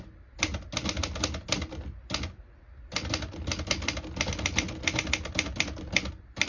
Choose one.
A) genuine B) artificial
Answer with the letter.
A